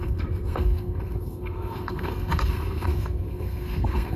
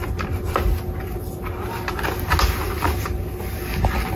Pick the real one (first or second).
second